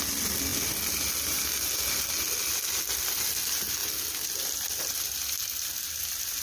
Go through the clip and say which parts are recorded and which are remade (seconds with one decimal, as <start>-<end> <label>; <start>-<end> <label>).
0.0-3.8 recorded; 3.8-4.8 remade; 4.8-6.4 recorded